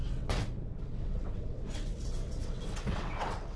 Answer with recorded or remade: remade